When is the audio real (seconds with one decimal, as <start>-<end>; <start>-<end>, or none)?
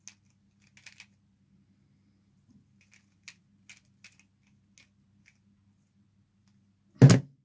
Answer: 0.0-7.4